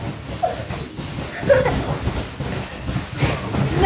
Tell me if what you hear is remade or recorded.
recorded